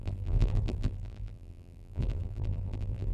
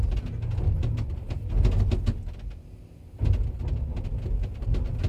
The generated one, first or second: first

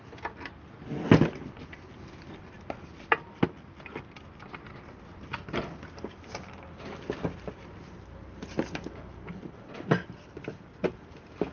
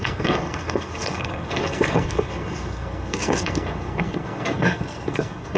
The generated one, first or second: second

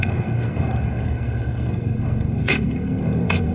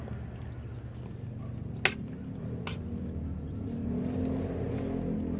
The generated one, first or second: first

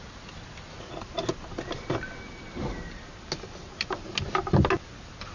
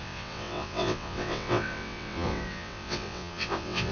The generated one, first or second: second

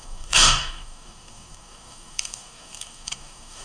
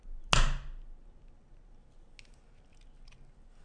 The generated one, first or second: first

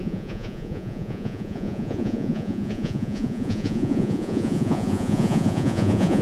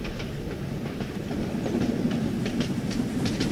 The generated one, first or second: first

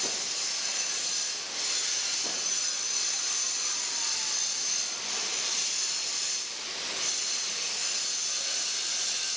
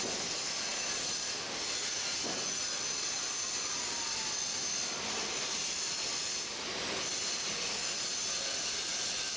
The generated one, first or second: first